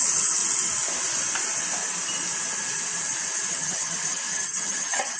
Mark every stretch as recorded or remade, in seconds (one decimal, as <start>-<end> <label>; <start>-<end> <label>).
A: 0.0-0.4 remade; 0.4-3.5 recorded; 3.5-5.2 remade